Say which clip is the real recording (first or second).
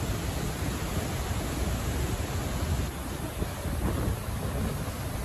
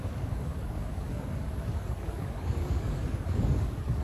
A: first